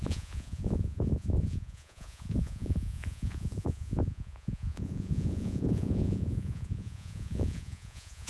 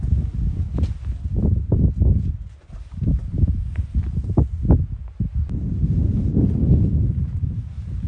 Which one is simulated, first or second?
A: first